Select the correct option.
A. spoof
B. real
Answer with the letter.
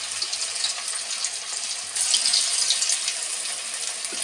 B